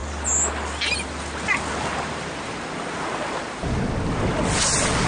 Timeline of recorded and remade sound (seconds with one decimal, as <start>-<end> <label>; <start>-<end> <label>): 0.0-5.1 recorded